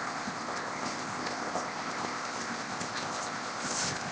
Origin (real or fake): fake